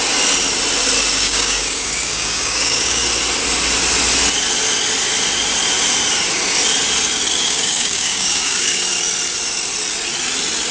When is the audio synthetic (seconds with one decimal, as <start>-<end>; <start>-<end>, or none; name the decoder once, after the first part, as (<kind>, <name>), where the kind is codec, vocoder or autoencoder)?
1.1-3.0 (codec, DAC); 7.4-8.8